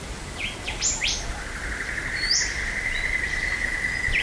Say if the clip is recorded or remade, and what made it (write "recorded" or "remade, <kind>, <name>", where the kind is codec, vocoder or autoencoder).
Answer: recorded